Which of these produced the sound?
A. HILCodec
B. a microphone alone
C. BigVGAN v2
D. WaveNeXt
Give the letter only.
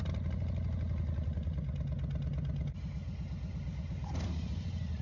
B